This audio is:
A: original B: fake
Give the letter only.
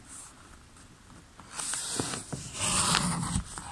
A